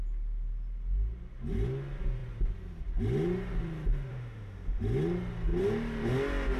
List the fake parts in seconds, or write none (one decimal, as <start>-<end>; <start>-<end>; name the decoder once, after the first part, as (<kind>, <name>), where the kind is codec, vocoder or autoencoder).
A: 4.1-4.8 (autoencoder, DAC-VAE)